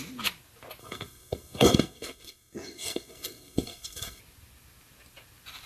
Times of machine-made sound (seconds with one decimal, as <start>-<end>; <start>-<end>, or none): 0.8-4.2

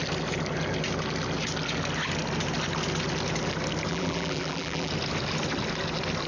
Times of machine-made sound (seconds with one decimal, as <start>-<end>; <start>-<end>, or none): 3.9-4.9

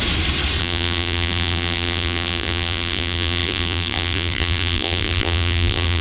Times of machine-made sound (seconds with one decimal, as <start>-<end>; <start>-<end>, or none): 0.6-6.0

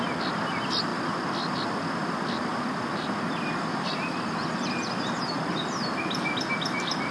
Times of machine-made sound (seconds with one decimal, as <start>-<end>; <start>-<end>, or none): none

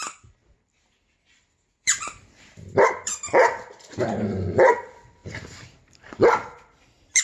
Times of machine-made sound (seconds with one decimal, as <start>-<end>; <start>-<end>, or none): 0.0-7.2

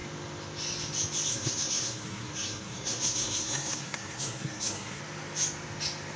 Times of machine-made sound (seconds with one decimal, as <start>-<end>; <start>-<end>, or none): 1.3-5.0

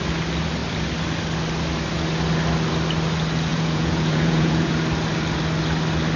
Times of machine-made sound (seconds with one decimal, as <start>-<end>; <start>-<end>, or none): 3.5-4.7